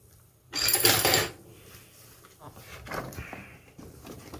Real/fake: fake